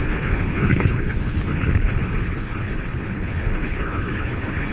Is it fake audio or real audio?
fake